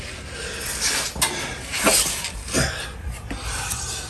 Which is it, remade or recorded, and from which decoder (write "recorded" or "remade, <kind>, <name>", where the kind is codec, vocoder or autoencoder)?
recorded